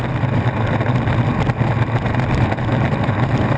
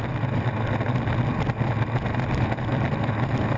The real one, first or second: second